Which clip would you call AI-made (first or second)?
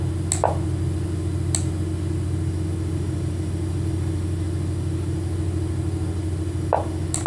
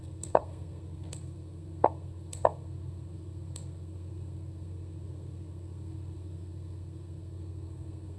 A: second